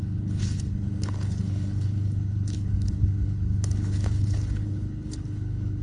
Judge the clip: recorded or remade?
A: remade